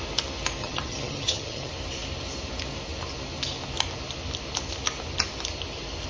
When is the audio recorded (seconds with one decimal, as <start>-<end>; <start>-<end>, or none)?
0.0-0.6; 1.7-6.1